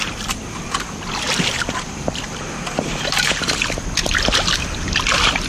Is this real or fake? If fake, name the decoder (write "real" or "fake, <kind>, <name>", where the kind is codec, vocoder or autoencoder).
fake, vocoder, BigVGAN v2